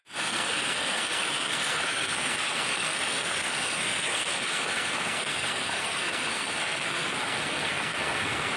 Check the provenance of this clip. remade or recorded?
remade